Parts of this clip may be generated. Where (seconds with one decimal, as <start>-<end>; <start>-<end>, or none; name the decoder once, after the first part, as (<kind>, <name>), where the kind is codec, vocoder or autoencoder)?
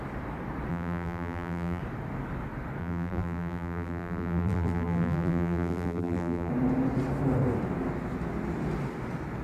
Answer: 0.7-1.8 (vocoder, BigVGAN v2); 2.8-6.5